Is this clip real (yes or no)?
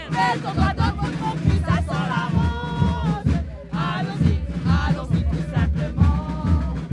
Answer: yes